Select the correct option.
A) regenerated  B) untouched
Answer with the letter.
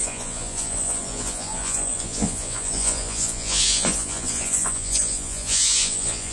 A